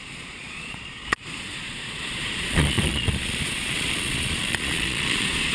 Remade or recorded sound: remade